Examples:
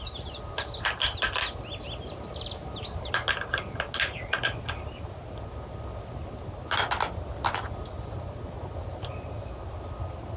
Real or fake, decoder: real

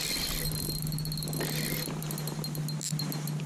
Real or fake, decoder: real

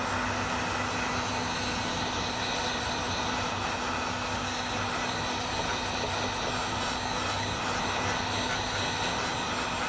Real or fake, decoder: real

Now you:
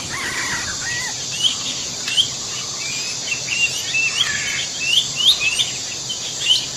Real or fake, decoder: real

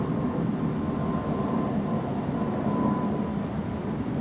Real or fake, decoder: real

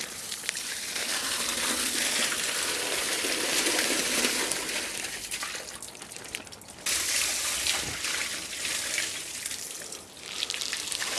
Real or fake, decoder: real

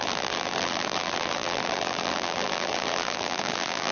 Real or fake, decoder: fake, vocoder, BigVGAN v2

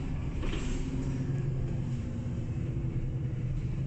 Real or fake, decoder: fake, vocoder, BigVGAN v2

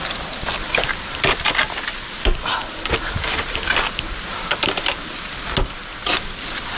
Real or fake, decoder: real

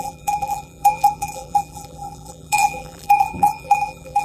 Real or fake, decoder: fake, vocoder, BigVGAN v2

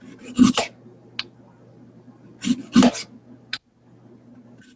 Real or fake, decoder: real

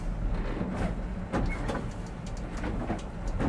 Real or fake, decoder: real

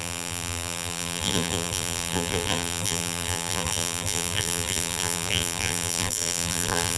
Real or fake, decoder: fake, vocoder, BigVGAN v2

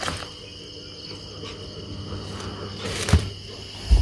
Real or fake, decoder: real